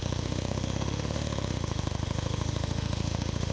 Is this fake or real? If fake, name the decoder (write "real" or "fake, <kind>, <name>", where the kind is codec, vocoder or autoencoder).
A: fake, autoencoder, DAC-VAE